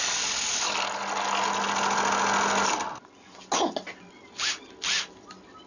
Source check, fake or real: real